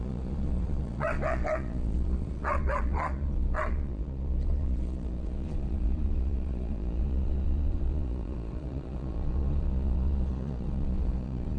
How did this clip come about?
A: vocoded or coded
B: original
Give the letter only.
A